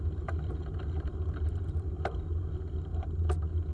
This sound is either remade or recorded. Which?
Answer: recorded